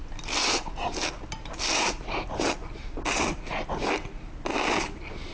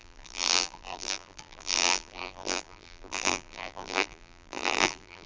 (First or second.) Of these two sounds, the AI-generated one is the second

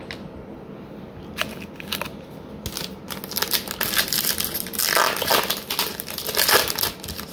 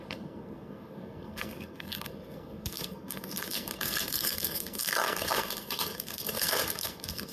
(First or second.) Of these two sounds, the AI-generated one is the second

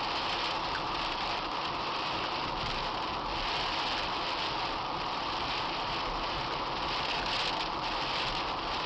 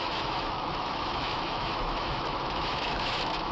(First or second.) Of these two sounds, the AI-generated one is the second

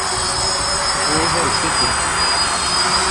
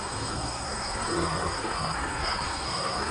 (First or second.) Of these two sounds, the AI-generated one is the second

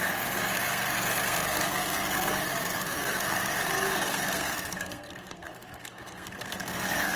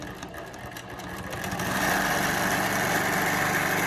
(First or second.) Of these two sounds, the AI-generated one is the first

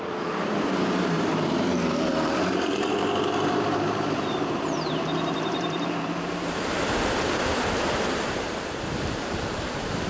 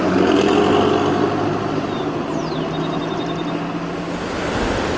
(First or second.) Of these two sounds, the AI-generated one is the first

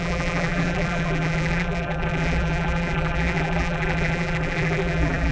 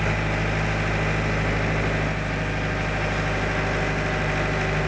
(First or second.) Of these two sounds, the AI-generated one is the first